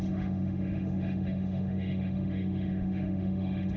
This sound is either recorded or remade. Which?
remade